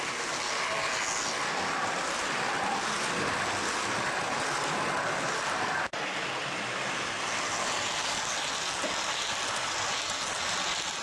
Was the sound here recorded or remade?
recorded